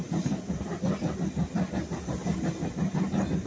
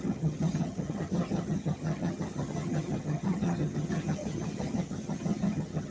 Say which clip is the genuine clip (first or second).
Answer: first